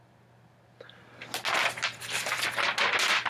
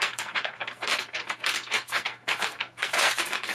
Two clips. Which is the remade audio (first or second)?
second